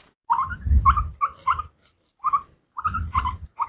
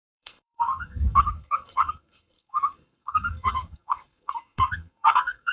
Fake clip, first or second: second